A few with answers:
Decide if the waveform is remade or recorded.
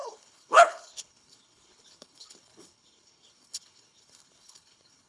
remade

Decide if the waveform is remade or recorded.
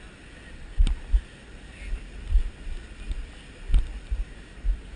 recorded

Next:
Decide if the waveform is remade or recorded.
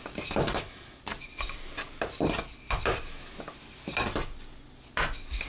recorded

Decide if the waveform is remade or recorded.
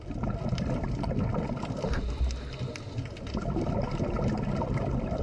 recorded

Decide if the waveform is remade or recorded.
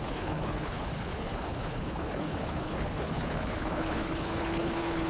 remade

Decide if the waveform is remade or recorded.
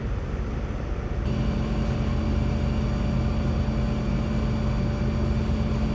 recorded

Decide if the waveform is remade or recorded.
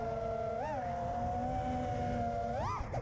recorded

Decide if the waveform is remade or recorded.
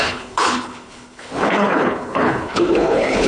remade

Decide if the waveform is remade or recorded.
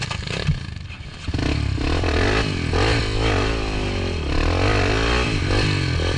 recorded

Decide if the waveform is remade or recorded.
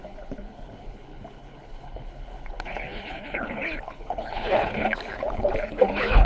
remade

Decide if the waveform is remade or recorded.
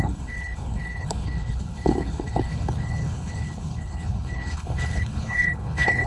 remade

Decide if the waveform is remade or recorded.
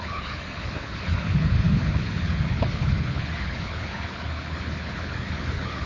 remade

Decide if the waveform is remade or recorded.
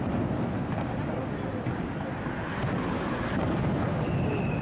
recorded